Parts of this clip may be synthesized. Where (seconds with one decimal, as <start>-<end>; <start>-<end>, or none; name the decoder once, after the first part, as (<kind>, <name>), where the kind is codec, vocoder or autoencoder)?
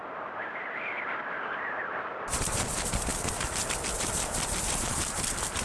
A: 0.0-0.9 (vocoder, BigVGAN v2); 2.1-3.1; 4.0-5.6